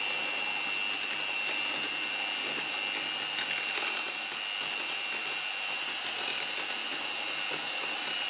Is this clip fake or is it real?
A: real